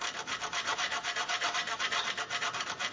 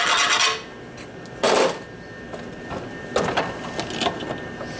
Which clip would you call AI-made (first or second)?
first